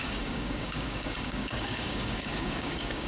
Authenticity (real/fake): fake